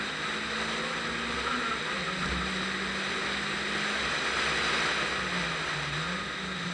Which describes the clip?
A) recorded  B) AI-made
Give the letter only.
A